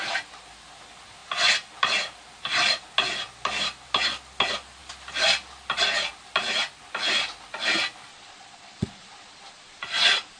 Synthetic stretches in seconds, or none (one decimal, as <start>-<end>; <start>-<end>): 8.1-10.4